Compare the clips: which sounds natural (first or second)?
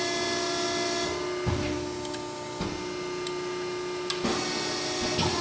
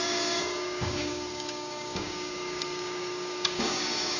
first